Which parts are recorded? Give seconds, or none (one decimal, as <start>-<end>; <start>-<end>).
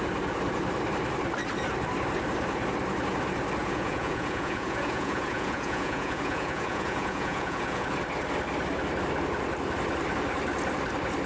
0.0-3.6; 7.9-11.3